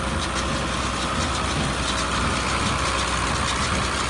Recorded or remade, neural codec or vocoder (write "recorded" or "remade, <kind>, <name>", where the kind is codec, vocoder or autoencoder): recorded